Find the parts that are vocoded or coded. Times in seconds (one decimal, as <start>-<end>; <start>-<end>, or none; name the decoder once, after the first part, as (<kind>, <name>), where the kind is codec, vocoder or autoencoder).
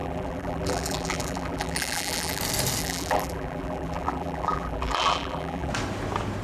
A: 0.0-2.4 (vocoder, BigVGAN v2); 2.8-5.7